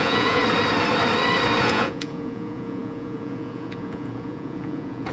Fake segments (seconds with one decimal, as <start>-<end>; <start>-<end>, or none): 0.0-0.4; 1.6-5.1

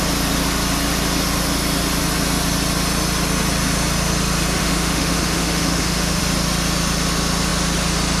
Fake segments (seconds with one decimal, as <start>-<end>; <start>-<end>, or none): 4.6-6.2

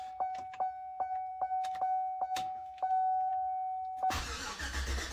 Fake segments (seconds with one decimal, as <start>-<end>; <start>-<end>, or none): 1.3-2.9